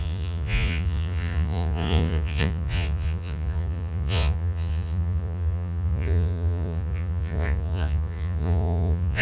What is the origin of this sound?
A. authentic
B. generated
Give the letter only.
B